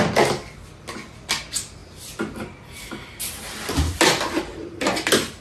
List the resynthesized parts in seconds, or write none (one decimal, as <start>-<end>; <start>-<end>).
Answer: none